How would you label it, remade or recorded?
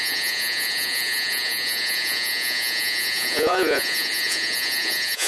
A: remade